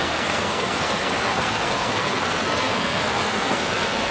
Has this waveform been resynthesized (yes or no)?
yes